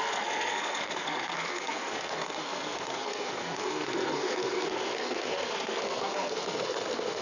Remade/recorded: remade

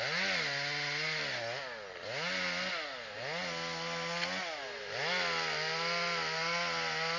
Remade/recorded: recorded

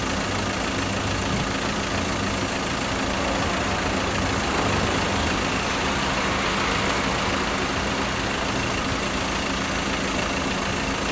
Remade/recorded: recorded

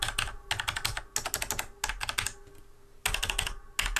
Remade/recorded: recorded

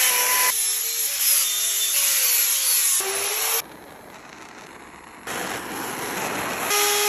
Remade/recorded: recorded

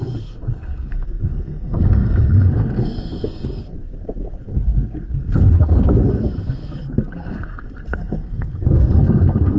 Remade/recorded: remade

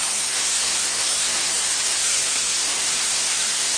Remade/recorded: remade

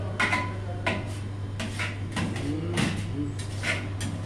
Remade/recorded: recorded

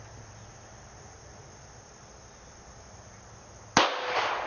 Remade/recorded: recorded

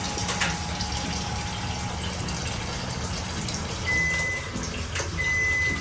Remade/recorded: recorded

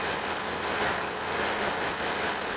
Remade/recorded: recorded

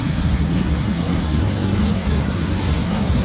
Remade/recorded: remade